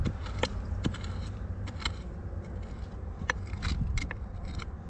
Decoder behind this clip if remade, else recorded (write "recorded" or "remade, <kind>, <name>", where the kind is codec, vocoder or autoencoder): recorded